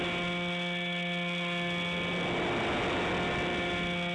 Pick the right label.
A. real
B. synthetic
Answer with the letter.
A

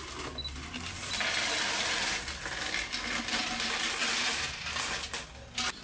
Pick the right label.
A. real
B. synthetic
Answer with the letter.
A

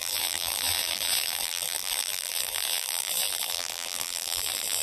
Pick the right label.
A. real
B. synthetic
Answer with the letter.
B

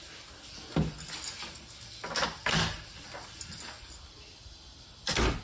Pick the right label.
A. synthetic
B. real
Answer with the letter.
B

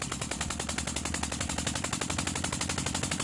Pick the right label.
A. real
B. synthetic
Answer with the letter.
A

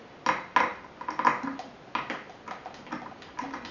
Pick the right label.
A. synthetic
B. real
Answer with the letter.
B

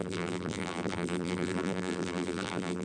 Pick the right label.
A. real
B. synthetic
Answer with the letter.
B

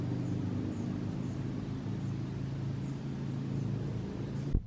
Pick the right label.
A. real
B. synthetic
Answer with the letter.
A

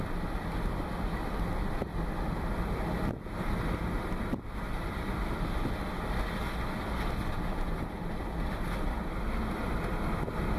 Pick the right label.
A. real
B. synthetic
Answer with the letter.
A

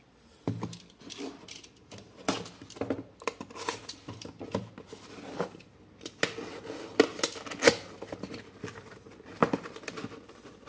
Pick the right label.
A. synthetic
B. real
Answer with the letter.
B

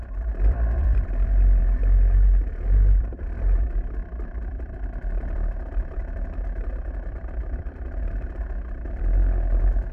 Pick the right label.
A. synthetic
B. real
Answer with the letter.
A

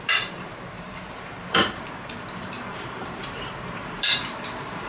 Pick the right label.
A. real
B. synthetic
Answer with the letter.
B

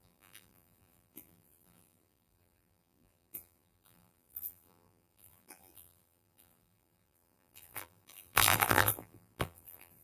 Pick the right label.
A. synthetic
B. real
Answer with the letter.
A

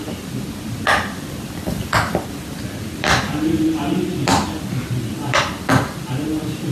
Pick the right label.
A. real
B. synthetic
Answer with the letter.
B